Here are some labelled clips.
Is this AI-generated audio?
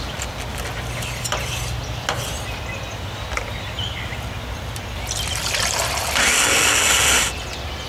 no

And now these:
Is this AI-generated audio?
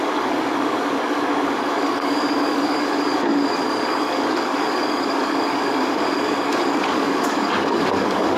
yes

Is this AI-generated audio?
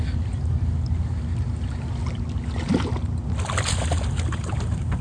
no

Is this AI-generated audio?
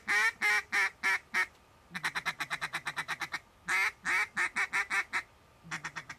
no